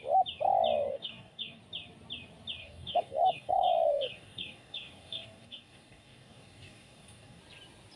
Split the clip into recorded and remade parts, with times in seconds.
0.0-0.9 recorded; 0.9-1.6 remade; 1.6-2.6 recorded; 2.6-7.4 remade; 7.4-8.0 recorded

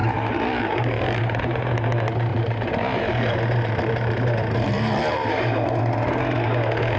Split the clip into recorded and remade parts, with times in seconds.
0.0-1.2 remade; 1.2-2.3 recorded; 2.3-5.8 remade; 5.8-7.0 recorded

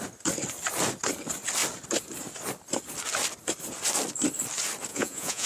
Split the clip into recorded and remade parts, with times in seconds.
0.0-4.9 recorded; 4.9-5.5 remade

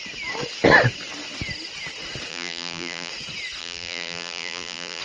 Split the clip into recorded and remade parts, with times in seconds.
0.0-2.3 recorded; 2.3-3.1 remade; 3.1-3.6 recorded; 3.6-5.0 remade

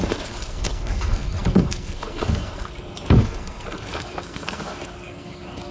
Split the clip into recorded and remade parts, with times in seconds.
0.0-5.7 remade

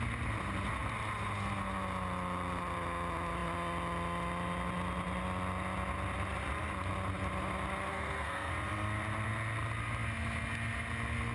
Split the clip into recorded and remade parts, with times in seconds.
0.0-7.9 recorded; 7.9-8.5 remade; 8.5-11.3 recorded